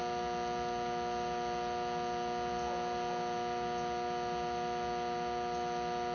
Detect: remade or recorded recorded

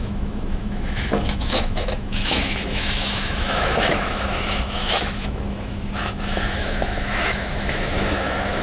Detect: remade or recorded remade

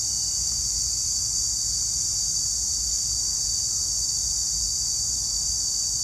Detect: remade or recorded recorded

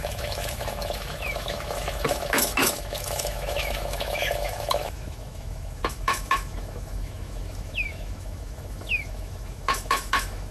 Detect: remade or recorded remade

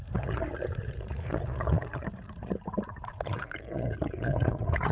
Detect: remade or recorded remade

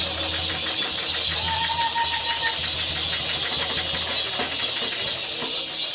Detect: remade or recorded recorded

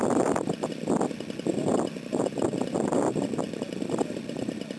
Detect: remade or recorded recorded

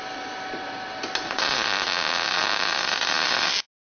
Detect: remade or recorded recorded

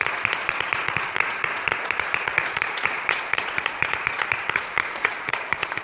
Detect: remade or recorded remade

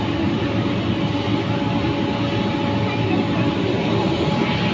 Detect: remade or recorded recorded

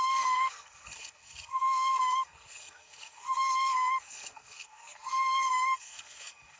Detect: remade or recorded remade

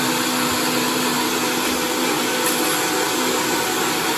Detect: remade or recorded recorded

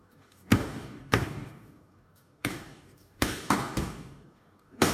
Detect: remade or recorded remade